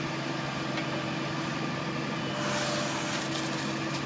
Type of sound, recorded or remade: recorded